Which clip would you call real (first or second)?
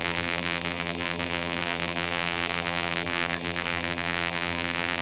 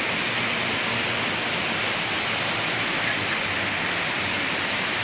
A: second